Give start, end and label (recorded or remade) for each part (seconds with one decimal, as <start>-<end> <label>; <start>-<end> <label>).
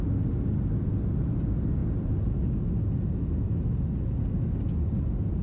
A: 0.0-5.4 recorded